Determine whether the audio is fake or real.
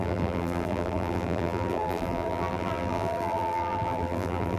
fake